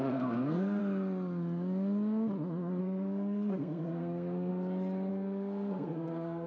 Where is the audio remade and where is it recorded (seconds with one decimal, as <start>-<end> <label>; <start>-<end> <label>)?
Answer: 0.0-0.8 remade; 0.8-2.8 recorded; 2.8-4.5 remade; 4.5-5.1 recorded; 5.1-6.5 remade